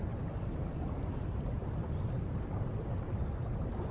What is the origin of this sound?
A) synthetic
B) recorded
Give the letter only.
B